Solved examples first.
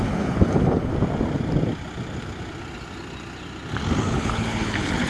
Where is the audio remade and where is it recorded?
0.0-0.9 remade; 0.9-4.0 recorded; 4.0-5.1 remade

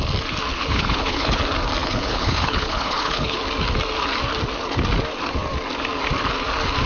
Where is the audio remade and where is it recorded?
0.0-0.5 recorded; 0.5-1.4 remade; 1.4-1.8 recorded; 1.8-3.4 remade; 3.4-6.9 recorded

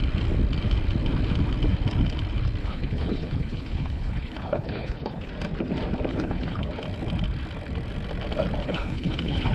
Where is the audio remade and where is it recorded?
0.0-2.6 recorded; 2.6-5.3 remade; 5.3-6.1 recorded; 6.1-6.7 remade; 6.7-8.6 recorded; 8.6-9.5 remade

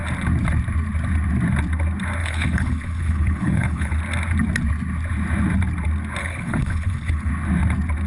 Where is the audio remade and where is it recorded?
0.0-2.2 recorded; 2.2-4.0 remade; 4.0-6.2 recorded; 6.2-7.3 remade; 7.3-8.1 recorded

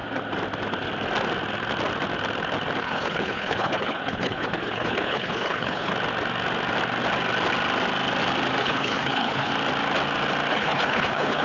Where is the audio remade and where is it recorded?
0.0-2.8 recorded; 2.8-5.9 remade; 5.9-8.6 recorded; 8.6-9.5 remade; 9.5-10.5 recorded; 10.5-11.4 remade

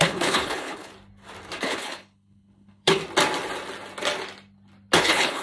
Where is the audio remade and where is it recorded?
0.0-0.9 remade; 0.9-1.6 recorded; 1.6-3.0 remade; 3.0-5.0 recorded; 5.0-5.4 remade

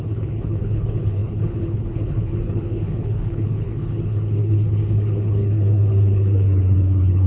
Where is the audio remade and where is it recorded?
0.0-7.3 remade